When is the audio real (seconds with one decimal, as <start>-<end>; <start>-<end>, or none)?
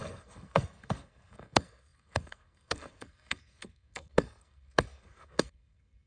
none